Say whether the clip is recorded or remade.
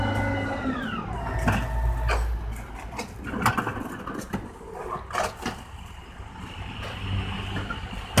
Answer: recorded